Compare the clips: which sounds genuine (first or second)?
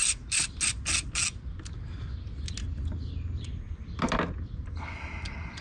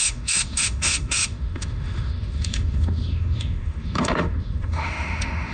first